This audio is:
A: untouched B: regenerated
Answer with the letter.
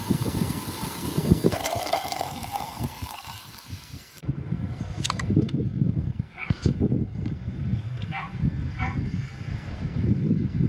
B